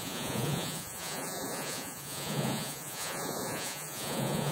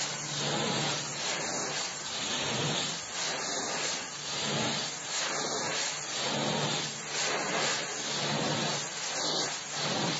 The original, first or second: second